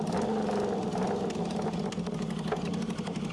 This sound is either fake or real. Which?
real